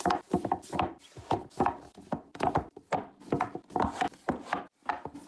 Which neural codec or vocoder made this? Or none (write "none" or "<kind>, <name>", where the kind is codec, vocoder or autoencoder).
none